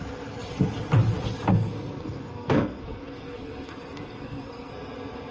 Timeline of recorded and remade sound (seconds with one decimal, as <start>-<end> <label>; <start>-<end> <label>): 0.0-1.5 recorded; 1.5-4.7 remade; 4.7-5.3 recorded